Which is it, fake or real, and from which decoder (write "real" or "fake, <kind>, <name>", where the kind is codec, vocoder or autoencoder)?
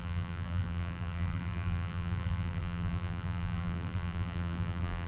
fake, vocoder, BigVGAN v2